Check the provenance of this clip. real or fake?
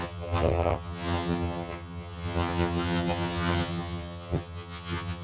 fake